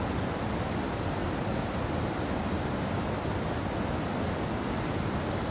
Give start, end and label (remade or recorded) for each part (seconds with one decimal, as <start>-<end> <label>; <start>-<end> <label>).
0.0-5.5 recorded

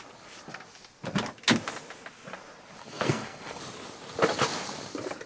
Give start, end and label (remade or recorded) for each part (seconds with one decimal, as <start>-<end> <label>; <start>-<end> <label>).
0.0-2.8 recorded; 2.8-3.6 remade; 3.6-5.3 recorded

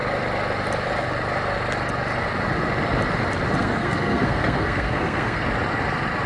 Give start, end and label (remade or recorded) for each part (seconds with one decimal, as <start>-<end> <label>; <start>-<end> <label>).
0.0-3.6 recorded; 3.6-5.4 remade; 5.4-6.3 recorded

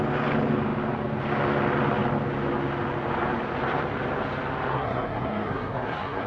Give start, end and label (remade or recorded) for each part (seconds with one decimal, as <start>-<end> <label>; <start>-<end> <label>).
0.0-4.7 recorded; 4.7-6.3 remade

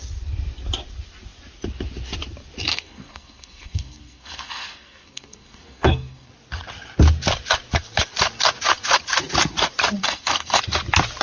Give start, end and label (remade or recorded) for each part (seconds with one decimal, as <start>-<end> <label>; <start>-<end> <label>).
0.0-2.7 recorded; 2.7-6.3 remade; 6.3-10.0 recorded; 10.0-10.6 remade; 10.6-11.2 recorded

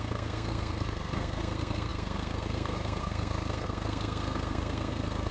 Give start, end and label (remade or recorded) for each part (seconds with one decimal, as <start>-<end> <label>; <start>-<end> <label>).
0.0-5.3 remade